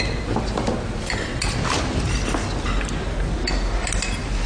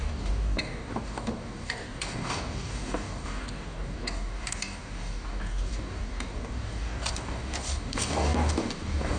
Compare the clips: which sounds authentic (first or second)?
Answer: first